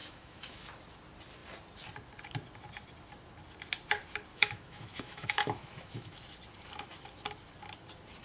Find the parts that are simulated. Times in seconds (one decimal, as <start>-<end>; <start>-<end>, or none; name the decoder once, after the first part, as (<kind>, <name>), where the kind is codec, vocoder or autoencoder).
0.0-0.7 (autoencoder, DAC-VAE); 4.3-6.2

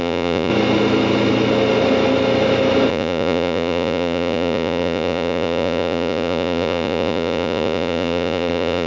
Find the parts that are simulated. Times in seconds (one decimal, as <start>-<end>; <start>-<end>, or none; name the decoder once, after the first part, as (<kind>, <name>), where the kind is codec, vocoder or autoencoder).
0.0-0.5 (vocoder, Vocos); 2.9-8.9

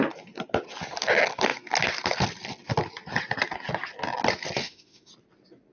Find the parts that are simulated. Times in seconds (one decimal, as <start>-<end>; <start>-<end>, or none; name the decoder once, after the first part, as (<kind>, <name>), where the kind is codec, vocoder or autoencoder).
4.6-5.1 (autoencoder, DAC-VAE)